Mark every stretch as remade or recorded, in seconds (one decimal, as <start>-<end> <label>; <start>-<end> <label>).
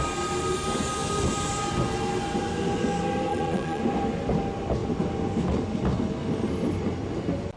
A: 0.0-3.3 recorded; 3.3-3.8 remade; 3.8-7.6 recorded